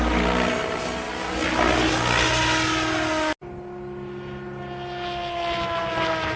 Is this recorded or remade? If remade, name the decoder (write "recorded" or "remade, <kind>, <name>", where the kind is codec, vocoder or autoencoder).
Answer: recorded